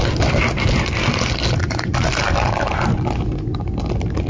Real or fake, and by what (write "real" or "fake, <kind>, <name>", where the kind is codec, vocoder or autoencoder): real